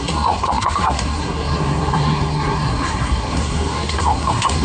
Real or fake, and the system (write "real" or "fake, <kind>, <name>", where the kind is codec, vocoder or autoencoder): fake, codec, SNAC